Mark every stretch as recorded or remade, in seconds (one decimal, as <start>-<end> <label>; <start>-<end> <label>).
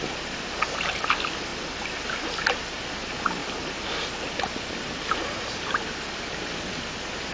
0.0-7.3 recorded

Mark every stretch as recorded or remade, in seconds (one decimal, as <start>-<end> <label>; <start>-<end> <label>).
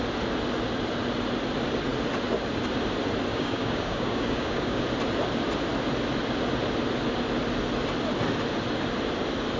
0.0-3.3 recorded; 3.3-4.8 remade; 4.8-9.6 recorded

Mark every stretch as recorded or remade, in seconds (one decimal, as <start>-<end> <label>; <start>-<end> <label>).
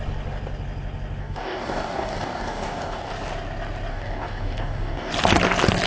0.0-1.2 recorded; 1.2-3.1 remade; 3.1-3.9 recorded; 3.9-5.1 remade; 5.1-5.9 recorded